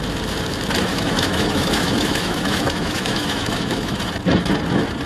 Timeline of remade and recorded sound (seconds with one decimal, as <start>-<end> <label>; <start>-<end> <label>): 0.0-0.9 recorded; 0.9-4.0 remade; 4.0-5.1 recorded